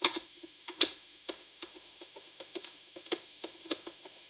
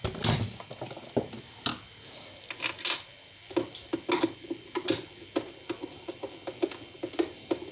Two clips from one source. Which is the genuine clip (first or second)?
second